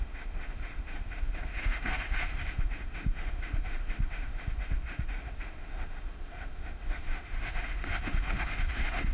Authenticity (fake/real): fake